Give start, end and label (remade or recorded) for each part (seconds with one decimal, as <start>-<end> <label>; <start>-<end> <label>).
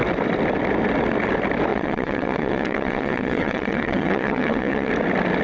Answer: 0.0-1.7 recorded; 1.7-4.9 remade; 4.9-5.4 recorded